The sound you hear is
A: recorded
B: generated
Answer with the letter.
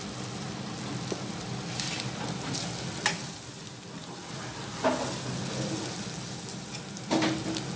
A